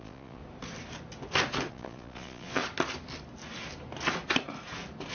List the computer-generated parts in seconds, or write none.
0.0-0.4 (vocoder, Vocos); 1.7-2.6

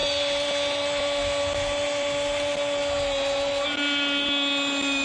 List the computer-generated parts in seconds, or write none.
none

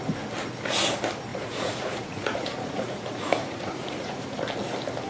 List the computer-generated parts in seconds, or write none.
1.3-4.4 (vocoder, Vocos)